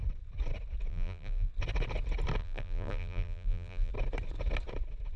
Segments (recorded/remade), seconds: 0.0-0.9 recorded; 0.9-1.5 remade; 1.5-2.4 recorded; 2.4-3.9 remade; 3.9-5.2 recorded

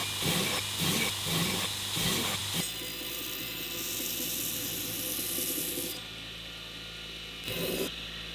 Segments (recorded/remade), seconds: 0.0-8.3 recorded